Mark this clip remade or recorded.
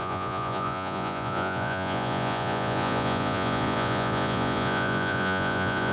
remade